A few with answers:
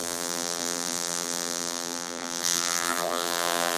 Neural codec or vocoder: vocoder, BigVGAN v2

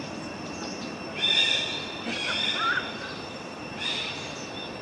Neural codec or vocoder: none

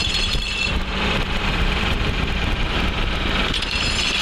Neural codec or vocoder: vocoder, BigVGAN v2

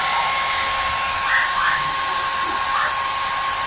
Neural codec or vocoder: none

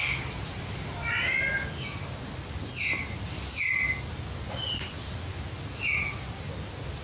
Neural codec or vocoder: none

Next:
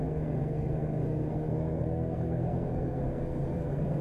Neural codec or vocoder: codec, SNAC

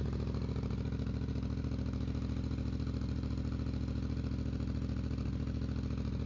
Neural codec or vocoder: none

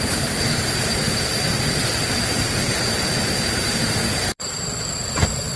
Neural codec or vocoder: vocoder, BigVGAN v2